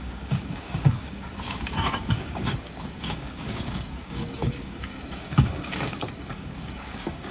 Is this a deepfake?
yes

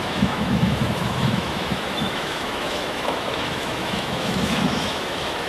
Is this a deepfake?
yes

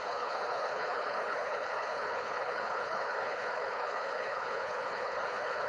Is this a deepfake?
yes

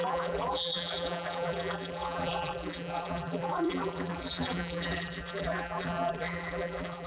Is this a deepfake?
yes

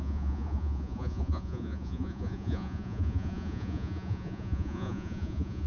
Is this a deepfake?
yes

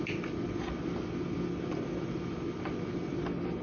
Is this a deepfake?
no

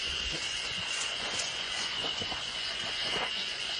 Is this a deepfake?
yes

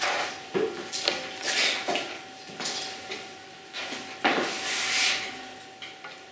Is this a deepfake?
no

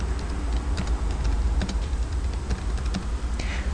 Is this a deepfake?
no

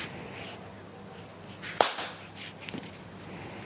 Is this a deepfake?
no